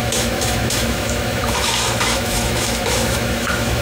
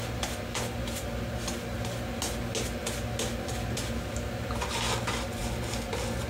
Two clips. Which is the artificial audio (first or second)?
first